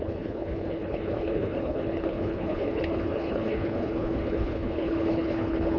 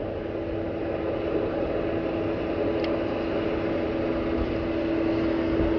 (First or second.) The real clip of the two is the second